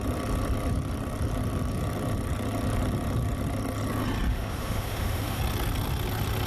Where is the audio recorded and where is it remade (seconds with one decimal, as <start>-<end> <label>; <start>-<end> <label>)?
0.0-4.3 recorded; 4.3-5.4 remade; 5.4-6.5 recorded